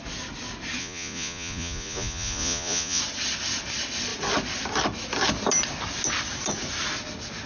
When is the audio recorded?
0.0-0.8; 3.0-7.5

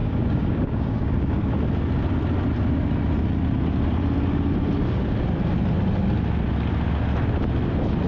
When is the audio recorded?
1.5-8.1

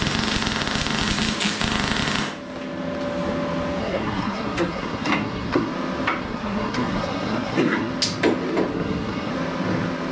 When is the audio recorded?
0.0-3.8; 5.7-6.2; 7.9-8.7; 9.3-10.1

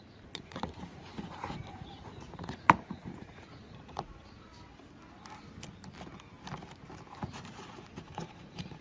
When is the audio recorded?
4.5-7.2